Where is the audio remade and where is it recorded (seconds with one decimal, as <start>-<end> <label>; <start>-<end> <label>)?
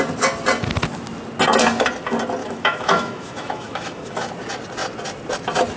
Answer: 0.0-2.4 recorded; 2.4-4.3 remade; 4.3-5.8 recorded